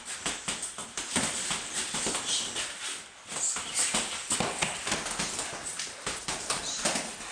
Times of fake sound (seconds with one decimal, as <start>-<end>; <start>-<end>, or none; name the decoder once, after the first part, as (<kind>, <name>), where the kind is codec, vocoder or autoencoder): 0.8-1.9 (vocoder, BigVGAN v2); 5.7-6.6